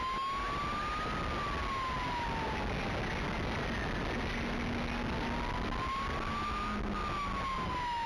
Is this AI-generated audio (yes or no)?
no